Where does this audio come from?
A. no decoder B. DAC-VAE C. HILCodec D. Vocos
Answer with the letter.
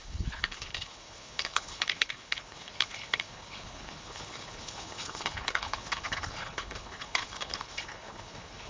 C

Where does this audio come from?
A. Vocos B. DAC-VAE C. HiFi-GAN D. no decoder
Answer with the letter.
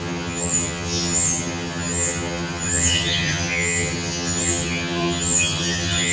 C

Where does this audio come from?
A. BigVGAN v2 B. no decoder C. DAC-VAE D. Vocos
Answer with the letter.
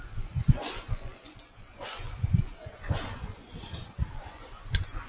D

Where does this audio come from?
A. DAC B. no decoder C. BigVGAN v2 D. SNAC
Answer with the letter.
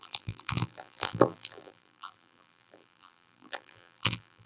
C